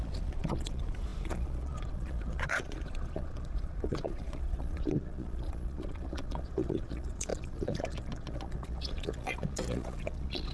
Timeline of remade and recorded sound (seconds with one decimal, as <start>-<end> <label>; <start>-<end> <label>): 0.0-10.5 remade